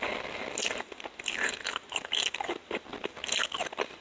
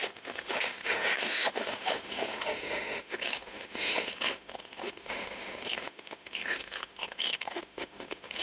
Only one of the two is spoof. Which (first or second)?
second